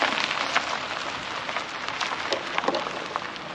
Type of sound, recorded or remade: recorded